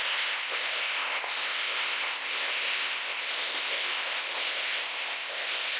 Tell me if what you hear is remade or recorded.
remade